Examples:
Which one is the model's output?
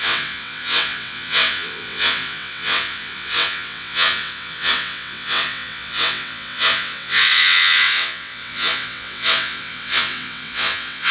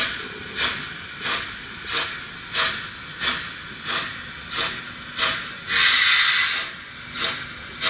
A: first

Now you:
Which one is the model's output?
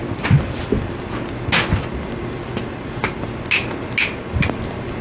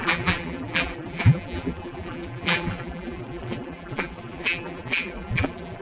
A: second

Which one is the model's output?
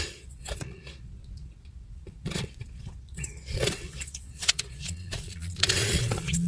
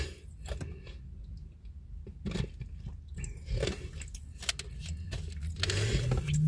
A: first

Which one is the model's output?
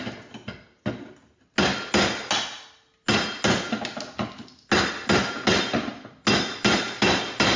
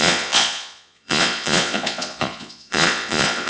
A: second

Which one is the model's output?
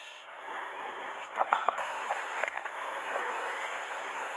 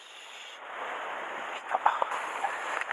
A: first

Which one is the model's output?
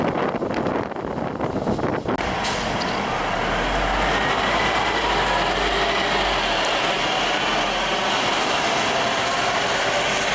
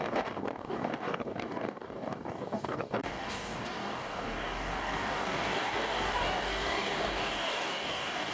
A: second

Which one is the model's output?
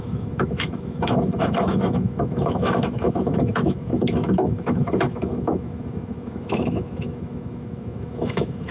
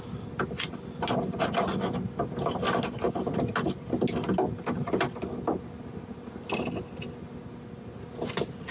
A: first